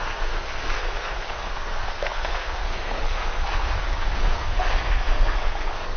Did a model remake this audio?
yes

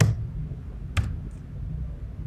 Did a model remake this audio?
no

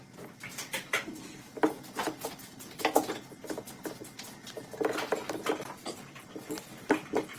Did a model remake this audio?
no